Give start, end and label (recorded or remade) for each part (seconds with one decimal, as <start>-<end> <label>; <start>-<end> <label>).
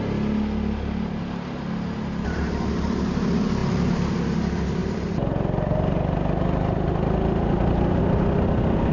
0.0-8.9 recorded